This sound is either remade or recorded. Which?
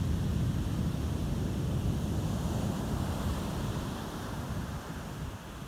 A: recorded